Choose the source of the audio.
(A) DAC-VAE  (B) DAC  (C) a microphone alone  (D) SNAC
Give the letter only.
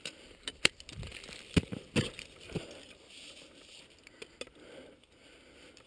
C